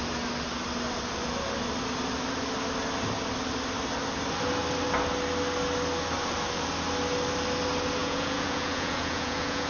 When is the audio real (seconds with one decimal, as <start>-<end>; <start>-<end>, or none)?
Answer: 0.0-8.0